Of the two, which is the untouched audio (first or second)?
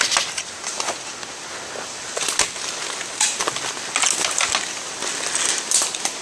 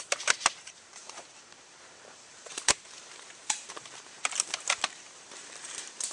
first